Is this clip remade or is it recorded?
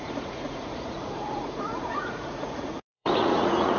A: remade